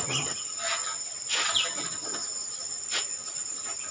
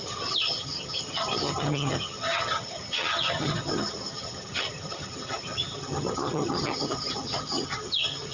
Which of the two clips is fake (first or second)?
second